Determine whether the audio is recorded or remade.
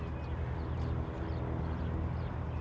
recorded